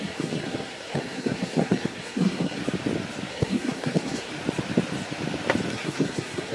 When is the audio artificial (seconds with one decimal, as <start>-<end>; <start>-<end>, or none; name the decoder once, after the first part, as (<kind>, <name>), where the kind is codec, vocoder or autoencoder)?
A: 0.0-2.6 (codec, SNAC); 3.3-4.3; 5.7-6.5